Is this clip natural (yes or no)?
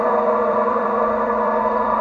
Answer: no